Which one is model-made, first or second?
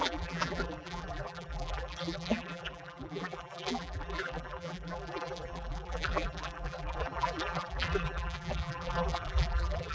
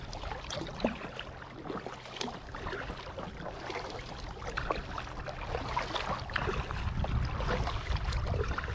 first